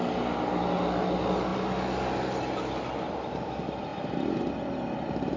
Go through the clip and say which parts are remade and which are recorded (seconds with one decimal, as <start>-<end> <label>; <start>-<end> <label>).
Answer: 0.0-5.4 recorded